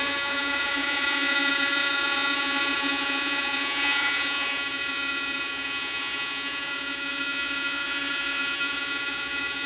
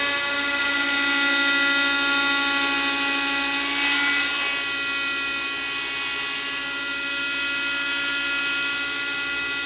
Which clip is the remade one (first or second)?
first